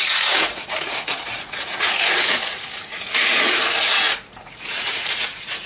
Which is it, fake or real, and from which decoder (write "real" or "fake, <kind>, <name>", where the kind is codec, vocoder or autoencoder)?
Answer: fake, vocoder, Vocos